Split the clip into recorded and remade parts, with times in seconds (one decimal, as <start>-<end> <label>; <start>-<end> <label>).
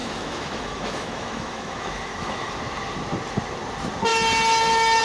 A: 0.0-2.5 remade; 2.5-5.0 recorded